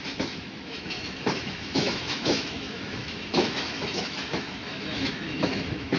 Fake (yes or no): yes